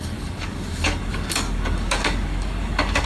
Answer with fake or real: fake